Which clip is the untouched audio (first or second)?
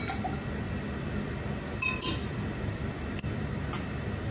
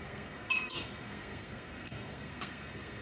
first